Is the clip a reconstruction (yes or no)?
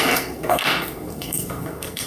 yes